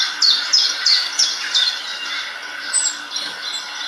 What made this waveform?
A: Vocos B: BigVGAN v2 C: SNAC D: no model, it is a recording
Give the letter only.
D